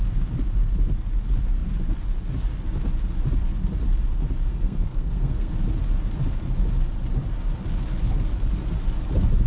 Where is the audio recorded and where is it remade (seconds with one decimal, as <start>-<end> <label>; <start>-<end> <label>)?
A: 0.0-4.5 recorded; 4.5-5.5 remade; 5.5-9.5 recorded